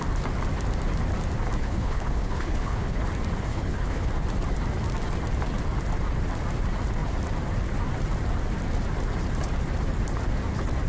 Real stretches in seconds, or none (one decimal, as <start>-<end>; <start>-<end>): 0.0-1.6; 3.0-3.5; 4.1-10.9